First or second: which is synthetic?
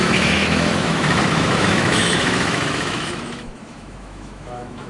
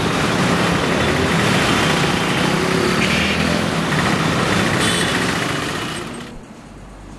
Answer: first